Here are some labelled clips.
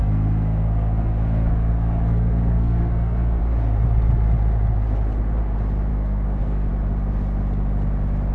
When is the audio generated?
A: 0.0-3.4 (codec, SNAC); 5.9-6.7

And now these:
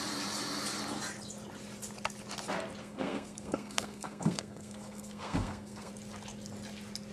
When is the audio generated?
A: 2.8-5.9 (codec, SNAC)

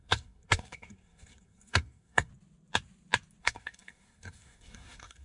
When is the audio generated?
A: 0.0-2.3 (codec, SNAC); 3.4-5.2

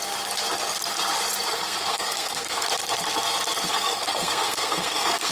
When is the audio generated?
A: 1.5-2.7 (codec, SNAC); 3.7-5.3

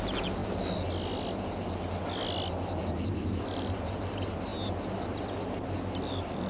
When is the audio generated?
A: none

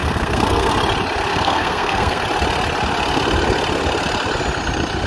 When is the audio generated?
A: 0.0-0.7 (codec, SNAC); 1.3-2.2

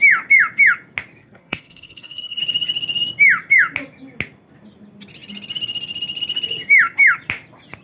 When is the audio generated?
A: 1.2-2.4 (codec, SNAC)